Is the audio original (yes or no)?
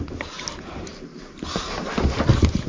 yes